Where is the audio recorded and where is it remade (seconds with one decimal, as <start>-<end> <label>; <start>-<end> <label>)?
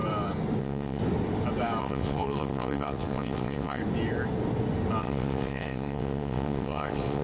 0.0-0.6 recorded; 0.6-1.0 remade; 1.0-1.8 recorded; 1.8-3.8 remade; 3.8-5.0 recorded; 5.0-7.2 remade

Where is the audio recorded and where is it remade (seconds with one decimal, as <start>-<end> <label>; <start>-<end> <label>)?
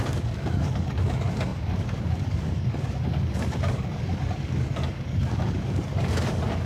0.0-6.7 remade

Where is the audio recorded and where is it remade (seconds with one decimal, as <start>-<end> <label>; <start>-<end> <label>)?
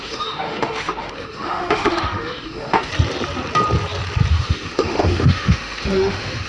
0.0-2.9 remade; 2.9-4.3 recorded; 4.3-6.5 remade